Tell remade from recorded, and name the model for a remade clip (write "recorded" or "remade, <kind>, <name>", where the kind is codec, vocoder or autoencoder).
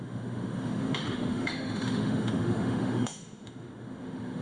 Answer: remade, autoencoder, DAC-VAE